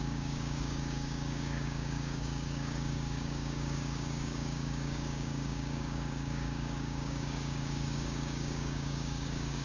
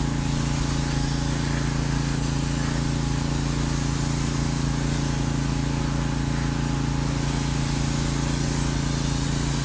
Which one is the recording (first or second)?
second